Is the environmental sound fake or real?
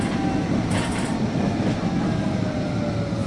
real